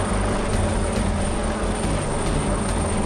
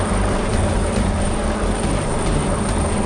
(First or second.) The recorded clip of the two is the first